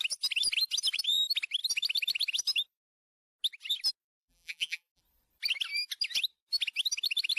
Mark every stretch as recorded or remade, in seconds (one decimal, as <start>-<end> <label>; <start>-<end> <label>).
0.0-4.2 recorded; 4.2-5.0 remade; 5.0-7.4 recorded